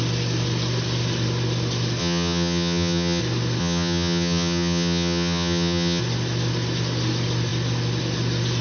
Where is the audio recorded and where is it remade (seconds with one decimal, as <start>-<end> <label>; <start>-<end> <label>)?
0.0-2.0 recorded; 2.0-3.2 remade; 3.2-3.6 recorded; 3.6-6.0 remade; 6.0-8.6 recorded